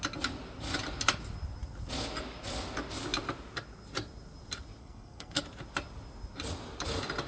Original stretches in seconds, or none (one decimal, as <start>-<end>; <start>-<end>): 0.0-4.8; 5.4-7.3